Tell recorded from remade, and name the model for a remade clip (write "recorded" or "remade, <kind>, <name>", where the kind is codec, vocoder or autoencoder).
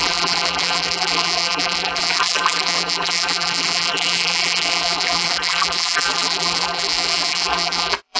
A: remade, vocoder, BigVGAN v2